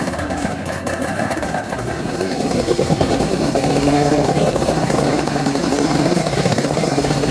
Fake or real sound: fake